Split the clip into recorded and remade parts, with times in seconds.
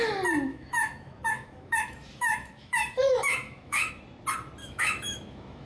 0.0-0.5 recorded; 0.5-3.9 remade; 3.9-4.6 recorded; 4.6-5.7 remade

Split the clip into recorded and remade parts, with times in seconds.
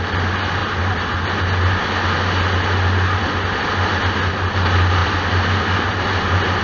0.0-6.6 recorded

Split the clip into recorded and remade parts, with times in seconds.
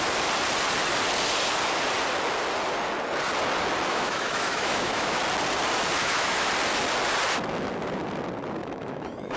0.0-3.9 recorded; 3.9-5.2 remade; 5.2-6.0 recorded; 6.0-6.5 remade; 6.5-8.6 recorded; 8.6-9.4 remade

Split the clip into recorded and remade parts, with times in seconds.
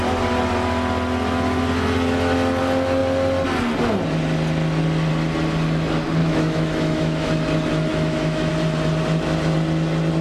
0.0-6.2 recorded; 6.2-7.3 remade; 7.3-7.9 recorded; 7.9-8.5 remade; 8.5-10.2 recorded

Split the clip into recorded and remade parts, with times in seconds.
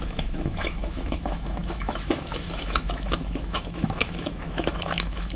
0.0-5.3 remade